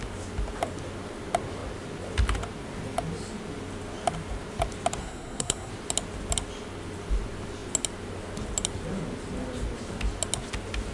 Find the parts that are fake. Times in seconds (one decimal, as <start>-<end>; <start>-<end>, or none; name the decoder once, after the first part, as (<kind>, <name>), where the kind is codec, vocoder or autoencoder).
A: 5.0-5.7 (codec, SNAC)